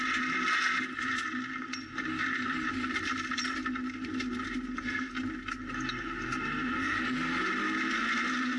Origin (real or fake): real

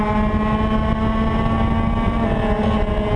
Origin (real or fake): real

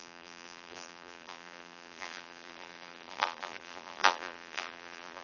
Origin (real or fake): fake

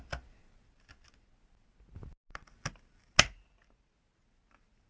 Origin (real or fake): real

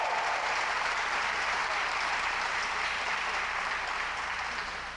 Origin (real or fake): fake